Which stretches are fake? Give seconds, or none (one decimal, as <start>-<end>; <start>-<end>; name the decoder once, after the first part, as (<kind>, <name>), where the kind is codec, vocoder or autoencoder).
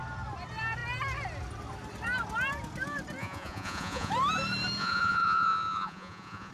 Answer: 3.2-4.1 (vocoder, Vocos); 4.8-6.5